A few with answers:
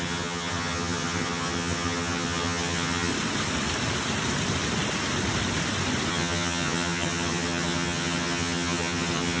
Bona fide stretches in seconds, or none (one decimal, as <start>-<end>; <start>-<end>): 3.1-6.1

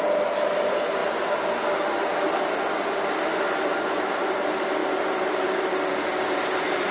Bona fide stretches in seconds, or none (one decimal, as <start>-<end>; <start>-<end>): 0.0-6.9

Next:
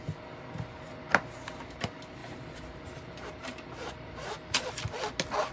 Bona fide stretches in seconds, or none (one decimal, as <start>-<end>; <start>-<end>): 0.0-2.2; 4.7-5.5

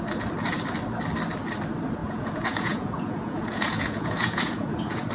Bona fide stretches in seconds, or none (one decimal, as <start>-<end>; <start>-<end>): 0.0-2.0

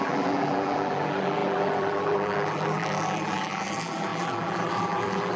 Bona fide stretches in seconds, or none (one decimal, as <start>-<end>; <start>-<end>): none

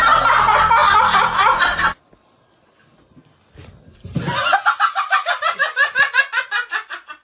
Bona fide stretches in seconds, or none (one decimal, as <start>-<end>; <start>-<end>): 0.0-7.2

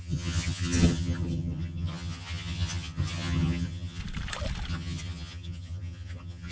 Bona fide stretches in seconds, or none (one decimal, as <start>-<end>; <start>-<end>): 4.0-4.7

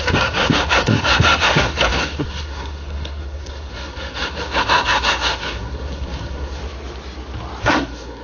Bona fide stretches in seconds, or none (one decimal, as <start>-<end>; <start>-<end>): 6.6-7.6